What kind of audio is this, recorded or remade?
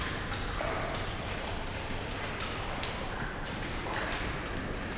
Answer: recorded